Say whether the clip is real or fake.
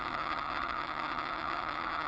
fake